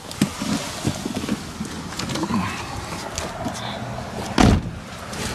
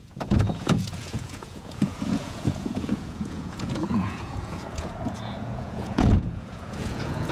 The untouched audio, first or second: first